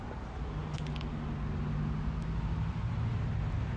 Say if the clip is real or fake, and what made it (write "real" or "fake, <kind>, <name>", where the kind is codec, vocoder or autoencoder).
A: real